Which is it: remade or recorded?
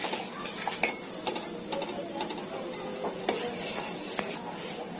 recorded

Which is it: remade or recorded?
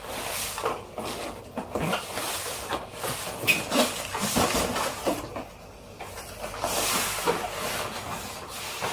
recorded